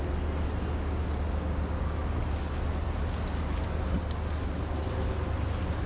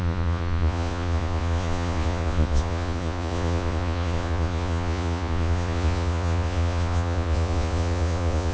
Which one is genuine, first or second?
first